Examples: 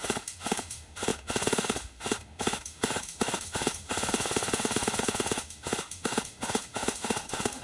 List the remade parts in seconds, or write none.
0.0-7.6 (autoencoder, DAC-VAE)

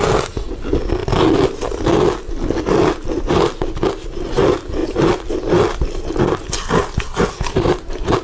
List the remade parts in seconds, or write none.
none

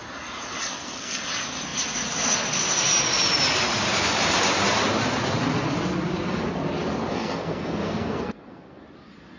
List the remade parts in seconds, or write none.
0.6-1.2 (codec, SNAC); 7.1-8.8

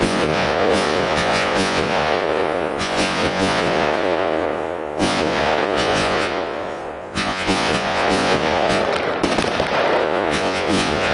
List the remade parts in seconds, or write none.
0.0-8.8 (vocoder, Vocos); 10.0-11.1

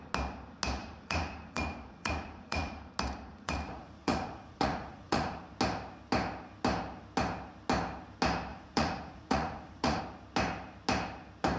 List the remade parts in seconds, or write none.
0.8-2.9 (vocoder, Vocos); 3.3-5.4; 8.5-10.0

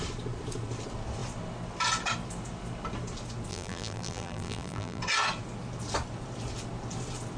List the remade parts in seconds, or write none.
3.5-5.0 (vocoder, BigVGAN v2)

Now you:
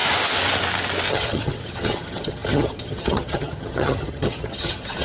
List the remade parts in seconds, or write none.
1.1-5.0 (vocoder, HiFi-GAN)

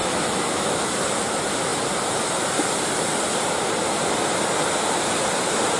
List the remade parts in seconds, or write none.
0.0-0.9 (autoencoder, DAC-VAE)